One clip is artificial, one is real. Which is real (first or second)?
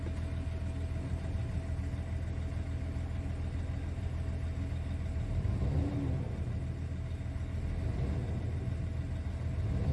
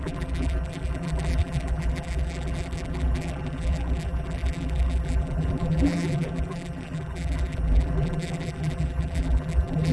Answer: first